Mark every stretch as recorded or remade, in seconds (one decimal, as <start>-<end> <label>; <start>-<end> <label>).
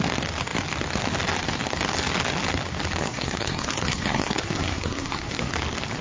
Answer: 0.0-3.0 recorded; 3.0-5.5 remade; 5.5-6.0 recorded